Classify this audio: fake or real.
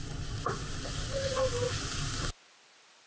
real